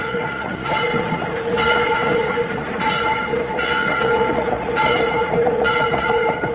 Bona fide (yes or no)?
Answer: no